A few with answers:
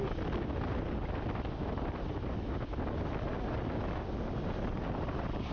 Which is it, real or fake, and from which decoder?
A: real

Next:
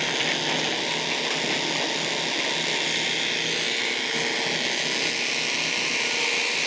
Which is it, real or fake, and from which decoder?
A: real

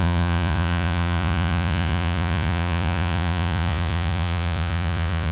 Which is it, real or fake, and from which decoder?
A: fake, vocoder, Vocos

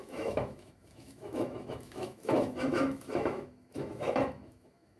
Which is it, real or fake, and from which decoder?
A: fake, autoencoder, DAC-VAE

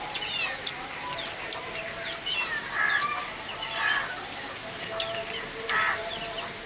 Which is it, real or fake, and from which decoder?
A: real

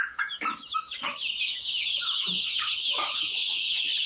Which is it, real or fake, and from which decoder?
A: fake, autoencoder, DAC-VAE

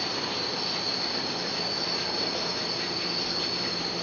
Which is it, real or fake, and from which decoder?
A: real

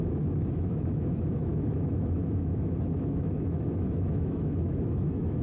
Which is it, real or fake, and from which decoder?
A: fake, autoencoder, DAC-VAE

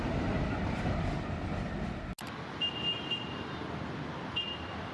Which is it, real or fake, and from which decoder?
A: real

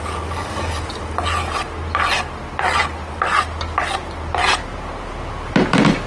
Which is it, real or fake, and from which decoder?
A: real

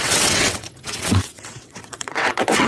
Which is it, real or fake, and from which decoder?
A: fake, vocoder, WaveNeXt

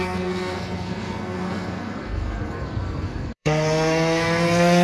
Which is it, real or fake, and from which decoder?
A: fake, codec, SNAC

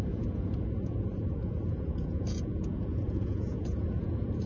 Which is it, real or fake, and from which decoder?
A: fake, vocoder, Vocos